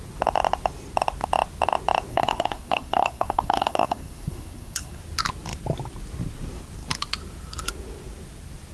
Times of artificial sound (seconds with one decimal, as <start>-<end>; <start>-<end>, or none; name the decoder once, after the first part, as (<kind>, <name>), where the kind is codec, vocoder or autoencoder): 2.1-5.0 (codec, SNAC)